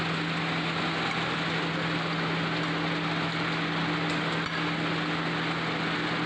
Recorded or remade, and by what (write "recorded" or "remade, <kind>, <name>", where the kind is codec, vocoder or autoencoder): recorded